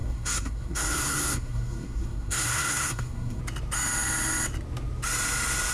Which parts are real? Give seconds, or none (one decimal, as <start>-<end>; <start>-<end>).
3.4-5.7